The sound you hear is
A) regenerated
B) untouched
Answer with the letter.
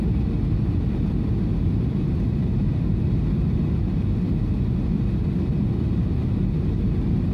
B